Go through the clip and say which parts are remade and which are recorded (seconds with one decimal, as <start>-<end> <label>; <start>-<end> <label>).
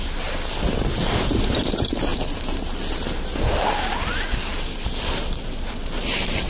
0.0-6.5 recorded